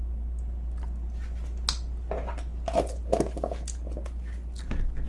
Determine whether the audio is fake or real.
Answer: real